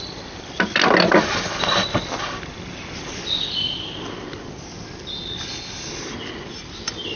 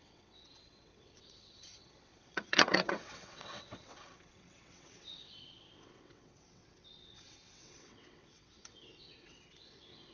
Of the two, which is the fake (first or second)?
second